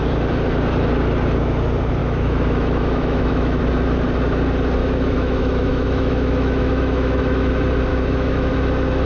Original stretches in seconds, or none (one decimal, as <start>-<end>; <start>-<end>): 0.0-2.0; 3.6-4.8; 7.5-7.9; 8.5-9.1